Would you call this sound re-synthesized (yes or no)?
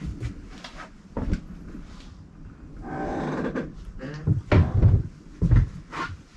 no